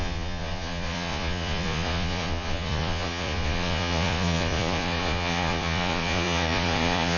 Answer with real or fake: fake